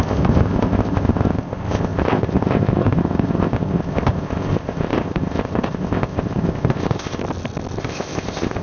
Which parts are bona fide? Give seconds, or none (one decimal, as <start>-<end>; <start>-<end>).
7.2-7.8